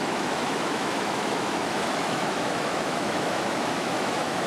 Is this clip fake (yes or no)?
yes